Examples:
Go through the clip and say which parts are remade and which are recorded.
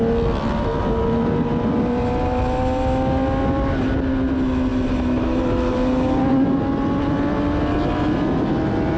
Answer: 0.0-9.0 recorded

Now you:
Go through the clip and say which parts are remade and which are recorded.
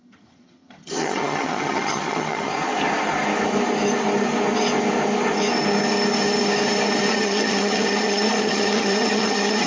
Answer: 0.0-2.5 remade; 2.5-7.1 recorded; 7.1-9.7 remade